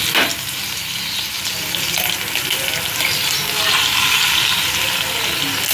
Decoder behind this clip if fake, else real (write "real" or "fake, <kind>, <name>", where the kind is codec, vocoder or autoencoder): real